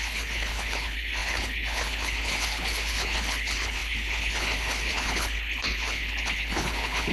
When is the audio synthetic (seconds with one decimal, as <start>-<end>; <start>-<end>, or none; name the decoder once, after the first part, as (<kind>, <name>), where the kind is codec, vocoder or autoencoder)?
0.0-7.1 (codec, HILCodec)